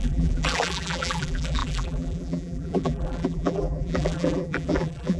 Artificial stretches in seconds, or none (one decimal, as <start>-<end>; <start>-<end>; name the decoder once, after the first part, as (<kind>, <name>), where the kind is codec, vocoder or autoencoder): 0.0-5.2 (vocoder, BigVGAN v2)